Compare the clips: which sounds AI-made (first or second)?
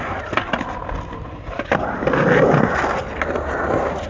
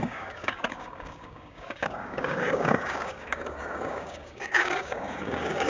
second